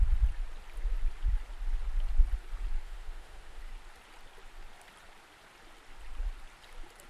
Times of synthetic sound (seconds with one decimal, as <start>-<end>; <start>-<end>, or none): 2.8-3.6